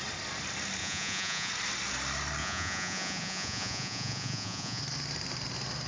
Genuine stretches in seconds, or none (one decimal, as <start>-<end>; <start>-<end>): 0.0-0.8; 1.5-2.4; 4.8-5.9